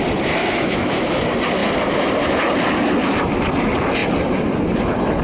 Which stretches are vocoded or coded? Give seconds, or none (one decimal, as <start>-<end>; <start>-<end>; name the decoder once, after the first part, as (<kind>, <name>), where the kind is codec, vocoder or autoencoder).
0.4-1.2 (autoencoder, DAC-VAE)